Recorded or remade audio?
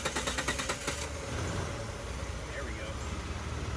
recorded